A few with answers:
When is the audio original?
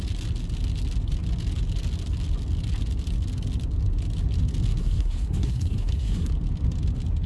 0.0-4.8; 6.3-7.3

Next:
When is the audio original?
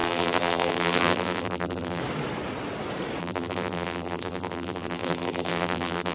2.0-3.2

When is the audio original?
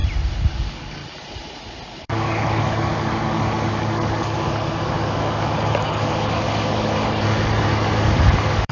0.0-0.5; 1.0-2.0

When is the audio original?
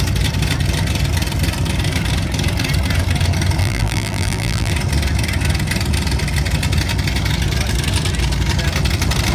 0.0-3.6; 4.7-9.3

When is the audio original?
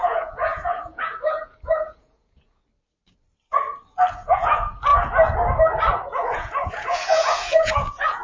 2.6-4.1; 4.9-6.1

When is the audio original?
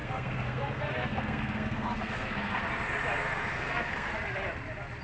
2.6-3.2; 4.1-5.0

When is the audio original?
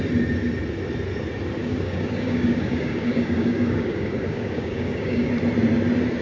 0.0-1.6; 5.3-6.2